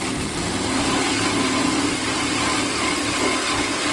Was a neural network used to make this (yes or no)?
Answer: no